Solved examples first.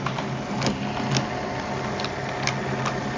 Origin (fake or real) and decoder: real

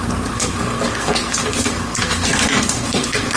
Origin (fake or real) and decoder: fake, codec, SNAC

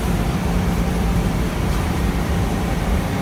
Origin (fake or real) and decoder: fake, vocoder, BigVGAN v2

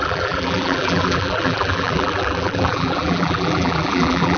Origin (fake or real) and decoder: fake, vocoder, BigVGAN v2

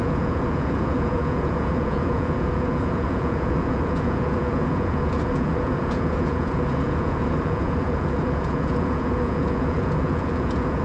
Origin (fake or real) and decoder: fake, vocoder, Vocos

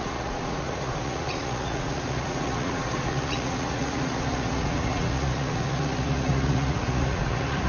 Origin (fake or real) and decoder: fake, vocoder, Vocos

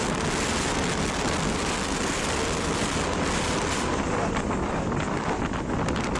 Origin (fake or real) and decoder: real